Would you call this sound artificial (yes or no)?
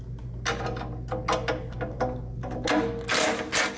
no